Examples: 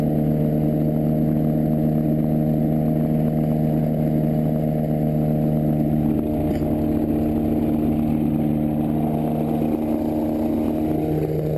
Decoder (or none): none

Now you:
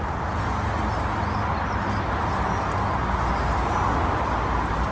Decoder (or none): none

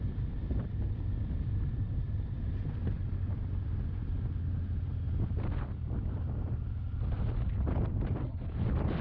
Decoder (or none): none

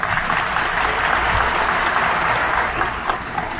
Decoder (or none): none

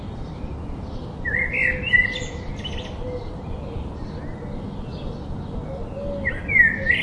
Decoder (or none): none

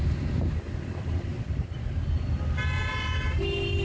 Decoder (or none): none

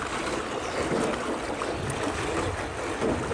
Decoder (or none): none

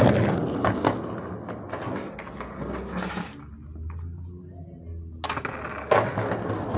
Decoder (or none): none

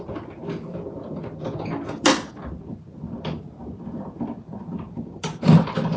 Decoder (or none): none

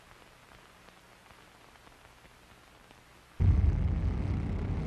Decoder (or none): none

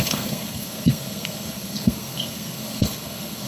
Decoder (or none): codec, SNAC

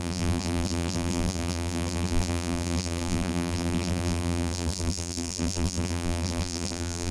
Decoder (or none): vocoder, BigVGAN v2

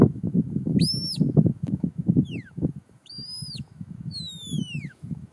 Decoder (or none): autoencoder, DAC-VAE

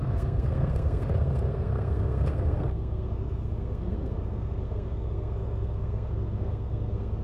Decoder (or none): codec, SNAC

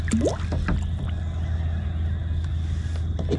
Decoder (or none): none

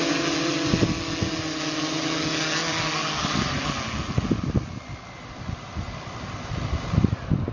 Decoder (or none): none